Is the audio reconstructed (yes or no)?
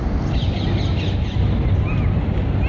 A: no